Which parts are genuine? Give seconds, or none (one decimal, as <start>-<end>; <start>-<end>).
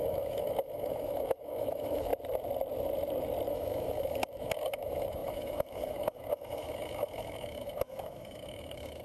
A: 2.1-3.5